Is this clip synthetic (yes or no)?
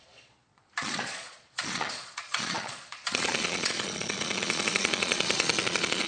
yes